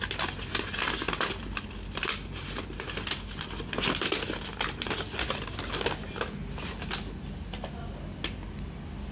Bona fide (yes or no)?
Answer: yes